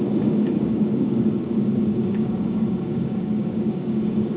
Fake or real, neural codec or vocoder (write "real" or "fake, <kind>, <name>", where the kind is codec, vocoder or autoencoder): fake, codec, DAC